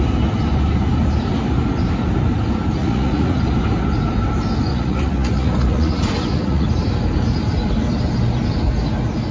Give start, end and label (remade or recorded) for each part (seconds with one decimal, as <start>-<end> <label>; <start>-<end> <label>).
0.0-2.8 recorded; 2.8-3.4 remade; 3.4-4.7 recorded; 4.7-6.7 remade; 6.7-9.3 recorded